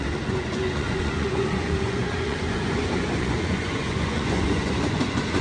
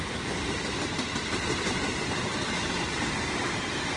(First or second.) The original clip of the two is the second